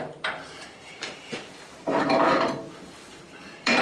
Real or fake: fake